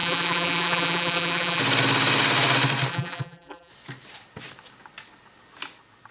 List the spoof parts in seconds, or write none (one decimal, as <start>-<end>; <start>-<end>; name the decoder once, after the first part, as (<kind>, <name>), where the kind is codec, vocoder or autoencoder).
0.0-1.6 (vocoder, BigVGAN v2); 2.9-3.7